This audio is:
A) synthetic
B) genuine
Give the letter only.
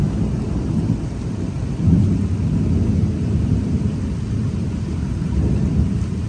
B